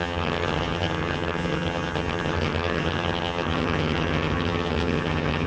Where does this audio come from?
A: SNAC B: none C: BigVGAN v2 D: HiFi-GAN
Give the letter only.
D